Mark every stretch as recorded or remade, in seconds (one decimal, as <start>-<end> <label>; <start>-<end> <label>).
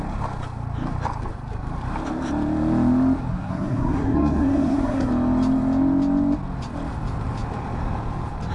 0.0-3.3 recorded; 3.3-5.1 remade; 5.1-8.5 recorded